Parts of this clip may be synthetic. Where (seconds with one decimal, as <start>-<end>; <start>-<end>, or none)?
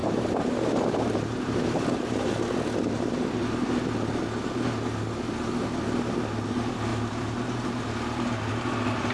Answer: 0.0-2.3; 6.9-8.5